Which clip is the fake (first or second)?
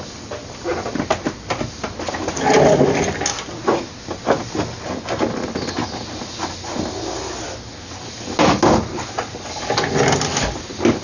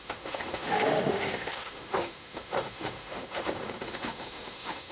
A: second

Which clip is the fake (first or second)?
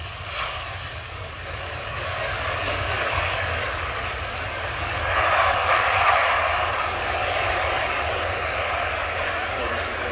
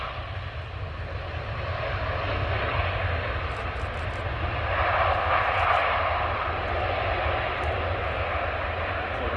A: first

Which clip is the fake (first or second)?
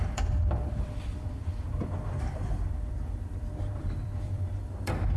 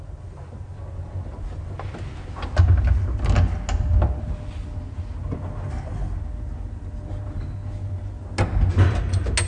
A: first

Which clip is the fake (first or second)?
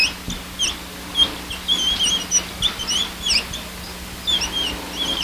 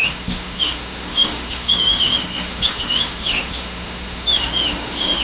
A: second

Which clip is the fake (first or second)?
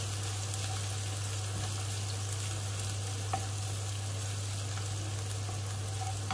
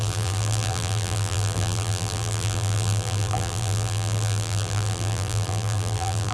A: second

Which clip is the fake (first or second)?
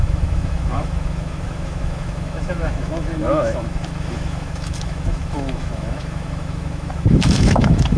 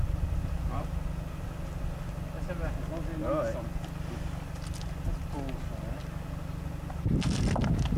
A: first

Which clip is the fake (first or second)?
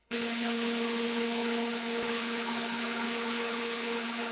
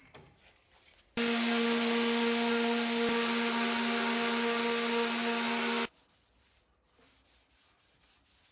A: first